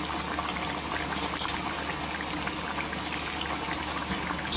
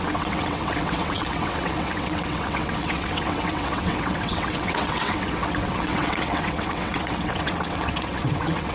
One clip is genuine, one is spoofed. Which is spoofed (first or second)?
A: second